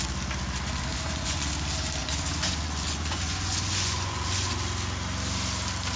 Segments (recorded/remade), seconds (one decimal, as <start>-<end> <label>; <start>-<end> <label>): 0.0-0.9 recorded; 0.9-1.5 remade; 1.5-2.0 recorded; 2.0-4.5 remade; 4.5-6.0 recorded